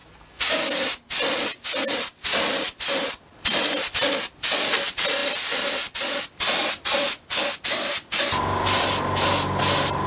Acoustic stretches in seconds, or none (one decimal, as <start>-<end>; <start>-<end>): 0.0-10.1